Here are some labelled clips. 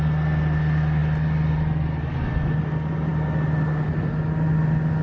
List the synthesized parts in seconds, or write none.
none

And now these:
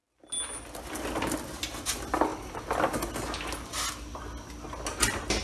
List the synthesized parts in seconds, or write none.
none

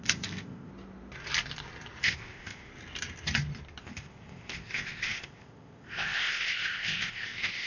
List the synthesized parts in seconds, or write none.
0.0-0.7; 2.0-2.7; 3.8-7.7

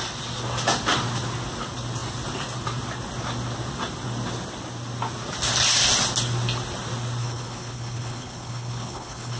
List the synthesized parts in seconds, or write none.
7.2-9.4

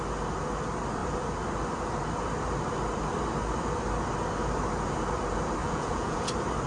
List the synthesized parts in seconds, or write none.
5.6-6.3

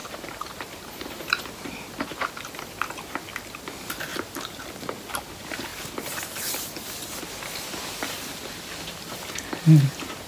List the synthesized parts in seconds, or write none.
0.0-1.4; 4.1-4.7